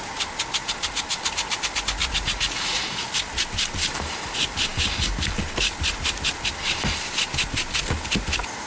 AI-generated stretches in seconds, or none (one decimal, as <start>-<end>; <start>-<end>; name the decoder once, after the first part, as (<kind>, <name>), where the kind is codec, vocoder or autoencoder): 2.0-3.1 (vocoder, Vocos)